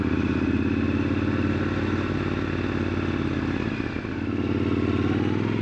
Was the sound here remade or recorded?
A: recorded